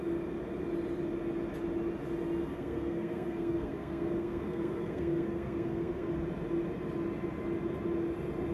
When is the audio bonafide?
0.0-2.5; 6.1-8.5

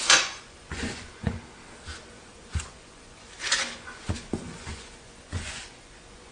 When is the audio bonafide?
1.4-2.1

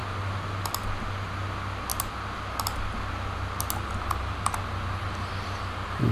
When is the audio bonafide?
0.0-6.1

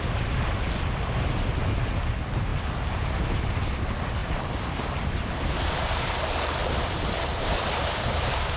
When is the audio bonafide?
0.0-4.2; 6.1-6.6; 7.6-8.6

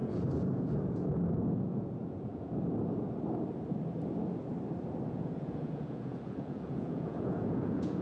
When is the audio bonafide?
2.5-5.1